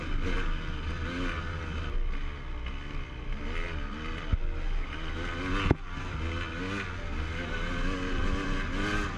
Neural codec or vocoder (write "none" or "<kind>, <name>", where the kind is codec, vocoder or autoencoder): none